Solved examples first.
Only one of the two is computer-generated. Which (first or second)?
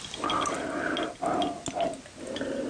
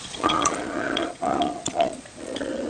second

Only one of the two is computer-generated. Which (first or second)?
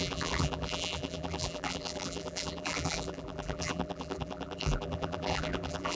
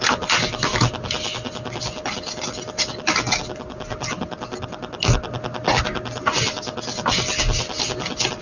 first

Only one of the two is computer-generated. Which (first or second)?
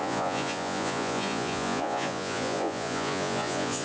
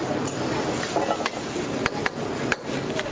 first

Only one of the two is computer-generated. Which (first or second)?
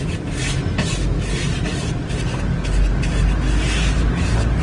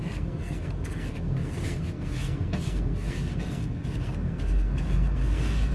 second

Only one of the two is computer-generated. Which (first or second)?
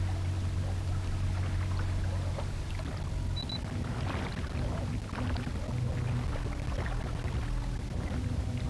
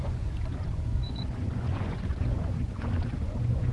second